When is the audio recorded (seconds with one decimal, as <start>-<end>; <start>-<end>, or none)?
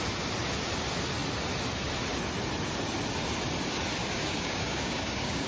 0.0-4.0